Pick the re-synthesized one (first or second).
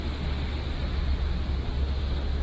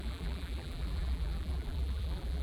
second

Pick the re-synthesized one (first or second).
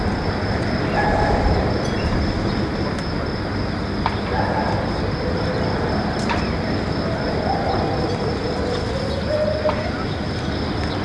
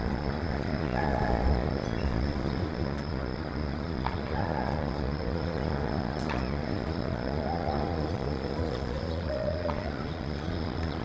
second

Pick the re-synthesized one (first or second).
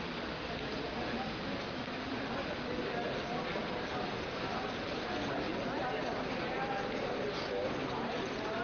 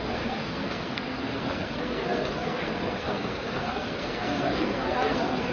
second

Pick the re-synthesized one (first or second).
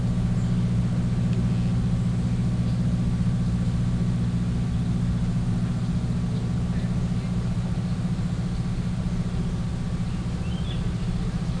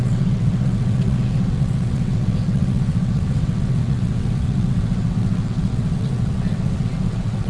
second